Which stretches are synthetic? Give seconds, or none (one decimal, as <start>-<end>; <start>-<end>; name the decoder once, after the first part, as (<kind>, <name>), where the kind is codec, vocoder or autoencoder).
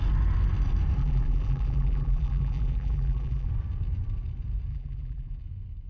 1.0-3.5 (vocoder, BigVGAN v2); 4.7-5.4